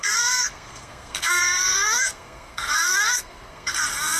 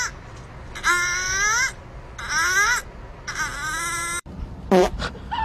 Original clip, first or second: second